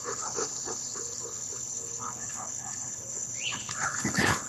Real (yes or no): no